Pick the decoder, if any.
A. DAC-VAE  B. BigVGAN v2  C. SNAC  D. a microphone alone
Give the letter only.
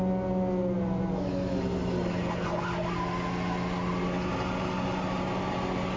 D